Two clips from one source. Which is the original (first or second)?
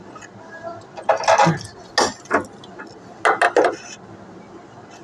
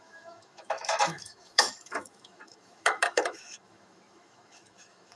first